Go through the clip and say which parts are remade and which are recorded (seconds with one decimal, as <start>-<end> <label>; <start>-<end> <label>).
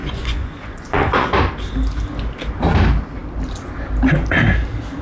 0.0-1.3 remade; 1.3-5.0 recorded